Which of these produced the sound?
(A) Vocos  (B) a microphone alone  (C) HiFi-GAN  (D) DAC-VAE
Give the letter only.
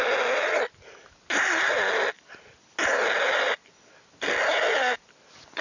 B